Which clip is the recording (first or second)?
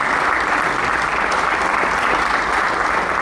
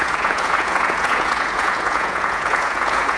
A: first